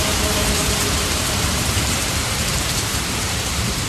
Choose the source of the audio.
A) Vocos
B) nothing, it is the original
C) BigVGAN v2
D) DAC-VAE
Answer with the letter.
C